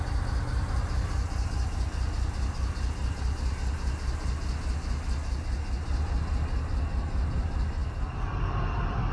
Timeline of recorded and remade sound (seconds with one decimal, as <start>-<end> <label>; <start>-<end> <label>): 0.0-9.1 recorded